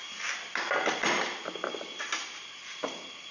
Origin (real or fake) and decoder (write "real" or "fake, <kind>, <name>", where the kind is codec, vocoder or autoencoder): real